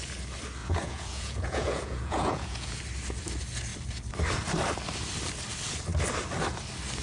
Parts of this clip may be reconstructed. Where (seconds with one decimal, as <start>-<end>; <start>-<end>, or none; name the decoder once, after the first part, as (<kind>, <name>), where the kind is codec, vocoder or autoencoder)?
0.6-2.8 (vocoder, Vocos)